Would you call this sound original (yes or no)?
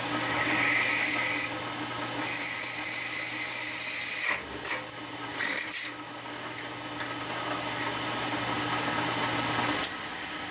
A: yes